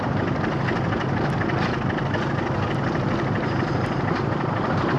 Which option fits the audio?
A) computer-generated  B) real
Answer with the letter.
B